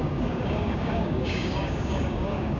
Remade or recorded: remade